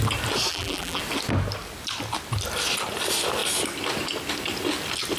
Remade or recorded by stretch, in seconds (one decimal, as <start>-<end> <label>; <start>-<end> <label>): 0.0-0.5 recorded; 0.5-1.0 remade; 1.0-5.2 recorded